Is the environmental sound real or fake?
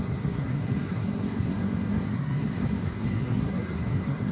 fake